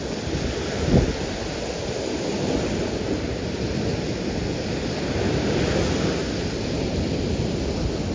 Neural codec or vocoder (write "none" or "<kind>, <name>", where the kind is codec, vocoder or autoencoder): none